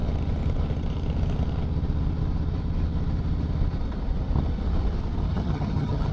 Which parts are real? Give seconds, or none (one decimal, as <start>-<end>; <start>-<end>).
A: 0.0-5.3

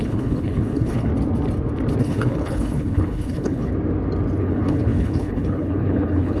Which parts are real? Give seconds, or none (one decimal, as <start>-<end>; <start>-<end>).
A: 1.1-2.0; 3.7-4.4

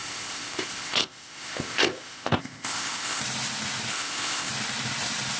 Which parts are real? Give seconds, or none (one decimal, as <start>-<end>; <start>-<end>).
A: 3.2-3.9; 4.5-5.4

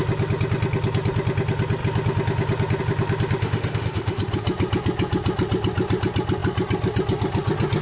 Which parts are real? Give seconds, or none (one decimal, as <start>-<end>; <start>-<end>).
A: 0.0-3.4; 4.2-7.8